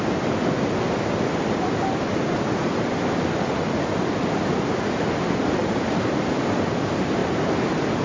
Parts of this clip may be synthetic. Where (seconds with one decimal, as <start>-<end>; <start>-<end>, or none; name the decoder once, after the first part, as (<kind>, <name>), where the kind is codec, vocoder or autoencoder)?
none